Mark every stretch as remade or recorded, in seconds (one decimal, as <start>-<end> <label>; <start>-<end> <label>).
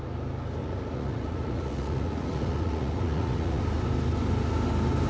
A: 0.0-0.6 recorded; 0.6-3.6 remade; 3.6-5.1 recorded